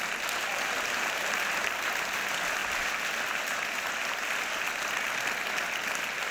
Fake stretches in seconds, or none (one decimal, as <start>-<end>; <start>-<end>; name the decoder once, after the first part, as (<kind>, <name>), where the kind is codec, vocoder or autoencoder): 0.5-1.5 (vocoder, BigVGAN v2)